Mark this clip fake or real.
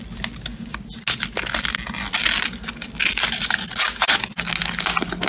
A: real